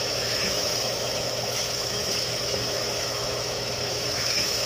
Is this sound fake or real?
fake